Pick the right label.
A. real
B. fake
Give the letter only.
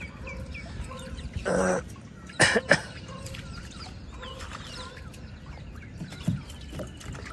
A